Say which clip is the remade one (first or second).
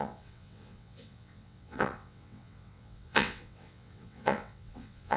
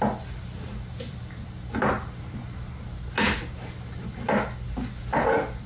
first